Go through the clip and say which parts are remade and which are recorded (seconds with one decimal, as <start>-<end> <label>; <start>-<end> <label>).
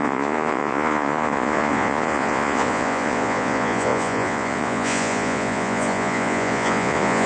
0.0-7.3 remade